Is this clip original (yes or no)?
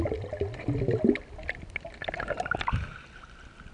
yes